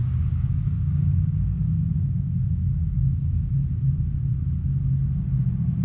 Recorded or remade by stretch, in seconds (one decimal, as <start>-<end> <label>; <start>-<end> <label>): 0.0-3.5 remade; 3.5-5.8 recorded